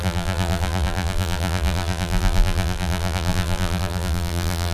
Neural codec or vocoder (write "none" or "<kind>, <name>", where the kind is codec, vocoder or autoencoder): vocoder, BigVGAN v2